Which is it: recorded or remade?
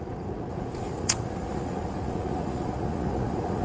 remade